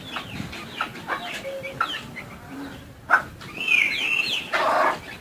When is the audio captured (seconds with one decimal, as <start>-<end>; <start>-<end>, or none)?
0.9-4.0

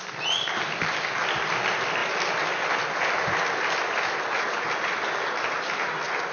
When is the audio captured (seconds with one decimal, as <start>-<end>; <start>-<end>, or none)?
0.0-6.3

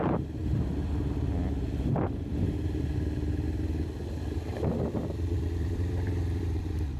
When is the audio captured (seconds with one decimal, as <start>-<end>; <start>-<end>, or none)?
0.4-4.6

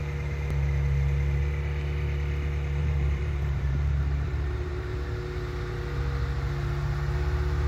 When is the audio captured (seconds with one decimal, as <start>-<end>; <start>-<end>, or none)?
0.0-2.8; 5.0-7.7

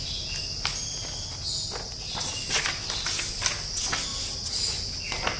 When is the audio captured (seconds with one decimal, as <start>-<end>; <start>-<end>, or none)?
0.0-4.1; 4.9-5.4

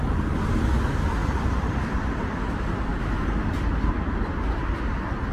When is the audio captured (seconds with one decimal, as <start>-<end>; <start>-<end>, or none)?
0.0-5.3